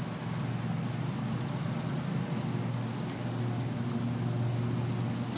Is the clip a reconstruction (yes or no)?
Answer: no